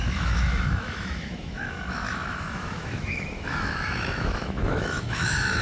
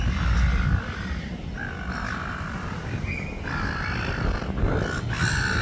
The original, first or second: second